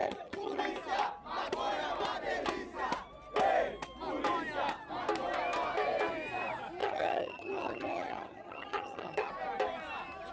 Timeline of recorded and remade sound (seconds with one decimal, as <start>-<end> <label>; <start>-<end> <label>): 0.0-0.6 remade; 0.6-6.8 recorded; 6.8-9.3 remade; 9.3-10.3 recorded

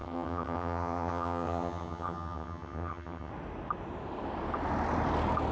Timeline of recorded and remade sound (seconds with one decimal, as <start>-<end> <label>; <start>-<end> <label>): 0.0-3.3 remade; 3.3-5.5 recorded

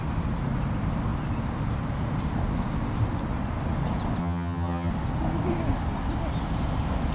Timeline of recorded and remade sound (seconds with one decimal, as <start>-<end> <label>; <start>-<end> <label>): 0.0-4.2 recorded; 4.2-4.9 remade; 4.9-7.1 recorded

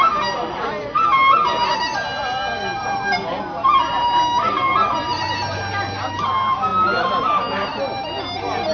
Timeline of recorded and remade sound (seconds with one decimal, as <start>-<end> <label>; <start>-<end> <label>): 0.0-8.7 recorded

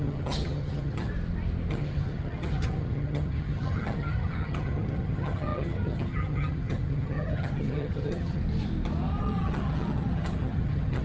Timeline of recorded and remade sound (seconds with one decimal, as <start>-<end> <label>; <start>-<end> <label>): 0.0-1.1 remade; 1.1-1.7 recorded; 1.7-8.4 remade; 8.4-9.2 recorded; 9.2-11.0 remade